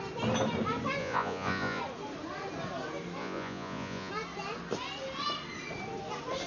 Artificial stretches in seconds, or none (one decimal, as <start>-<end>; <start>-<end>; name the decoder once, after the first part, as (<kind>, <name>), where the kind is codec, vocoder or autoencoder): 1.0-1.8 (vocoder, Vocos); 3.2-4.1